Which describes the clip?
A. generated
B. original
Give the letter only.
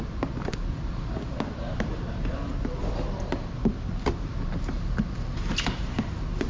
B